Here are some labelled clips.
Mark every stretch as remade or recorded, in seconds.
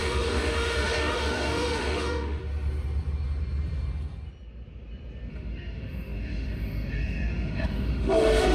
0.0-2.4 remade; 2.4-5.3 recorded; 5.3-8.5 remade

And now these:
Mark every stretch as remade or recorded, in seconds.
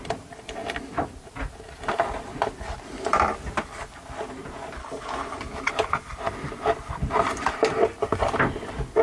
0.0-4.8 recorded; 4.8-5.4 remade; 5.4-9.0 recorded